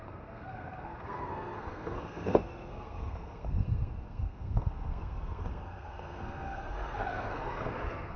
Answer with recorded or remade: remade